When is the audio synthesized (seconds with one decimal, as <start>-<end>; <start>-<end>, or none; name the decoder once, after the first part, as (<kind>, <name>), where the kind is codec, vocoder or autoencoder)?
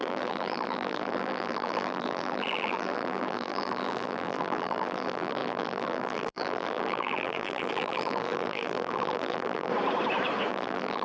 0.0-9.7 (vocoder, BigVGAN v2); 10.5-11.0